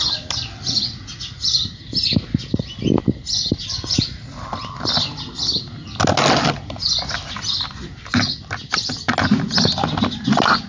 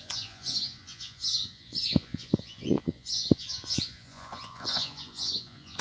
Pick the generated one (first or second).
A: second